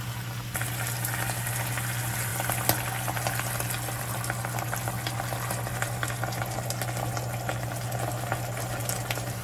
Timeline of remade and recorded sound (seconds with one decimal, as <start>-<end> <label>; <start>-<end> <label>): 0.0-9.4 recorded